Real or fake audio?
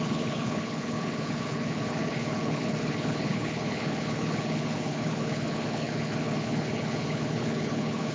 fake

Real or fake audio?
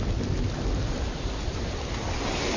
real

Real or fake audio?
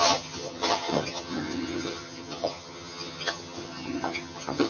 fake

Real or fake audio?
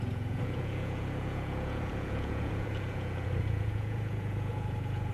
fake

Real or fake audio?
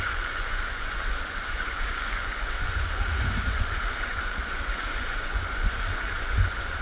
fake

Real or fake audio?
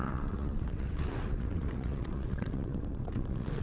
fake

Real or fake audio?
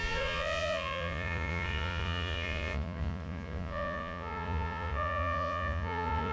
fake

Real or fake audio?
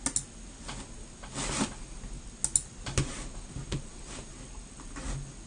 real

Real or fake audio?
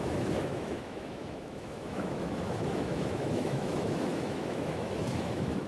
fake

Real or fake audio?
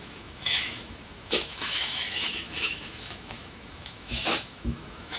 fake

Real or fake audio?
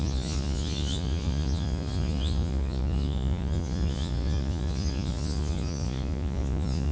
fake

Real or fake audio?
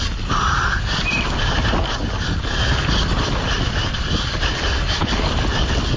real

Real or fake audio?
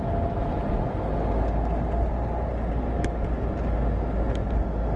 real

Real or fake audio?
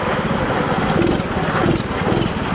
real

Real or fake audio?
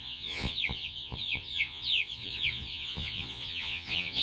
fake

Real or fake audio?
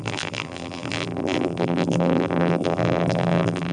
fake